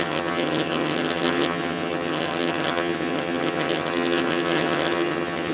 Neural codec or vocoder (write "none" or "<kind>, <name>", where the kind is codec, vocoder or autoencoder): vocoder, HiFi-GAN